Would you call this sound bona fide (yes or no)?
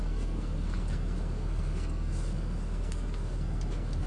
no